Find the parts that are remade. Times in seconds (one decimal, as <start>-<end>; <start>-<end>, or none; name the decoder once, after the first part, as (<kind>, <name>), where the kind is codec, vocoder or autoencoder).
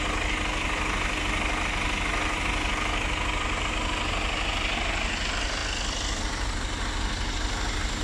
none